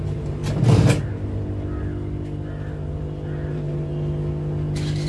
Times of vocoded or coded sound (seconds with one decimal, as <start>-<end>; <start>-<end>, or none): 0.0-0.4; 3.5-3.9